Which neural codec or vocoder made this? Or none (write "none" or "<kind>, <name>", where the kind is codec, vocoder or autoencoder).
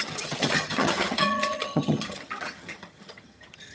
vocoder, HiFi-GAN